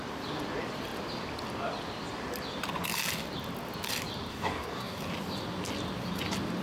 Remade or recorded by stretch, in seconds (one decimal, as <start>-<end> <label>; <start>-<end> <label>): 0.0-4.3 recorded; 4.3-5.0 remade; 5.0-6.6 recorded